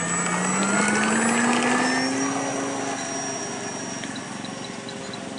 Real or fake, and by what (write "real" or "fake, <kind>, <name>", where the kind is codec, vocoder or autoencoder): real